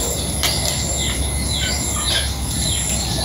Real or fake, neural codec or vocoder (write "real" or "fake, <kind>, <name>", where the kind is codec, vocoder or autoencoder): real